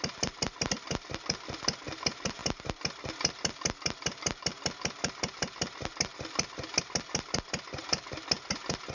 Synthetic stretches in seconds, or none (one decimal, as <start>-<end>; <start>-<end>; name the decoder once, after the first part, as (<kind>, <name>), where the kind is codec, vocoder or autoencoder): none

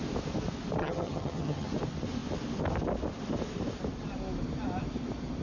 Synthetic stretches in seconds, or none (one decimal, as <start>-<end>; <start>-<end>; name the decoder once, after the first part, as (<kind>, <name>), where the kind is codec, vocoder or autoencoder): 0.8-1.7 (vocoder, HiFi-GAN)

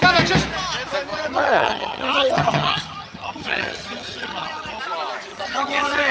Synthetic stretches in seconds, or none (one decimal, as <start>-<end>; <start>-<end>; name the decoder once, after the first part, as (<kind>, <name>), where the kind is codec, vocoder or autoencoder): 1.1-4.8 (vocoder, HiFi-GAN); 5.3-6.1